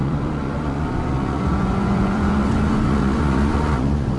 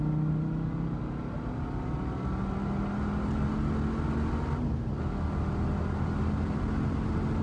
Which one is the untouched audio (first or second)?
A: second